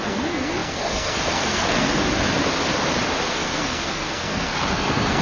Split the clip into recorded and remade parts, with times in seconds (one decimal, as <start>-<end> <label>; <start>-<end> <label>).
0.0-2.0 remade; 2.0-3.3 recorded; 3.3-5.2 remade